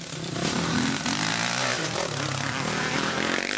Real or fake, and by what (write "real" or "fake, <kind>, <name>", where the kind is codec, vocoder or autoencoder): fake, vocoder, BigVGAN v2